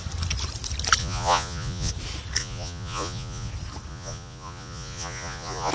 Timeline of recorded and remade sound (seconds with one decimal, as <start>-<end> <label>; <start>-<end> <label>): 0.0-1.0 recorded; 1.0-1.9 remade; 1.9-2.4 recorded; 2.4-3.5 remade; 3.5-3.9 recorded; 3.9-5.7 remade